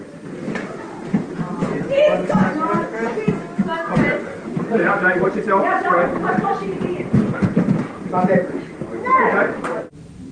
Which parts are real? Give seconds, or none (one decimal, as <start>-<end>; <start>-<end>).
2.4-4.2